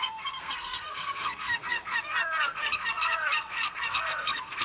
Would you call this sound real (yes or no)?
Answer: no